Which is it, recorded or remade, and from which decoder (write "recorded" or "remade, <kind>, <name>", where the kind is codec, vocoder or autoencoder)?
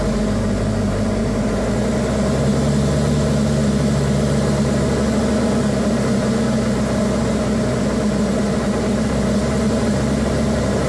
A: recorded